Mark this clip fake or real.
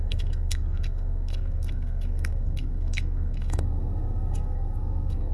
fake